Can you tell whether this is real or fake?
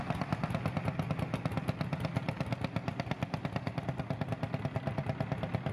real